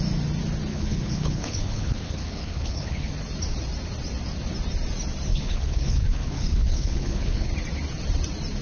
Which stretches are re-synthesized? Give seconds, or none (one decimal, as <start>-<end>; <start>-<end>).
0.7-3.1; 5.3-7.5